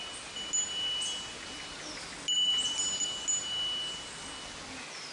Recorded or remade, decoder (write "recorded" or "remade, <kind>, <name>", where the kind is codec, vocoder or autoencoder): recorded